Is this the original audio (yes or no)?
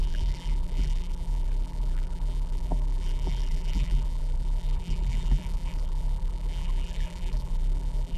no